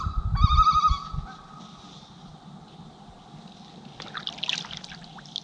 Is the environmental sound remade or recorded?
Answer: recorded